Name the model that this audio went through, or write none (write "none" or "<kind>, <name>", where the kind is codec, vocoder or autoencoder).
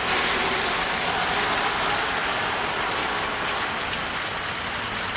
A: none